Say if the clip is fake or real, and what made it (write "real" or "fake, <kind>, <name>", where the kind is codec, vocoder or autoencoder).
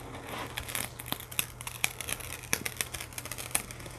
real